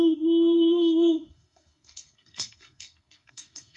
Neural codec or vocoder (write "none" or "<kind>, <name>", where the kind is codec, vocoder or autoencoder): codec, SNAC